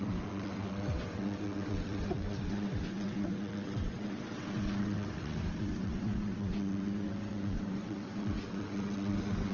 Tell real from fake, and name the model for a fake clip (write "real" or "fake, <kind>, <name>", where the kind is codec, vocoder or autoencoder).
fake, vocoder, WaveNeXt